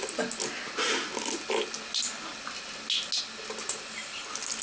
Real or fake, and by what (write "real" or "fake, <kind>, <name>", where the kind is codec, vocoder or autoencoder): real